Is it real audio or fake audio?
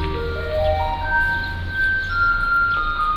real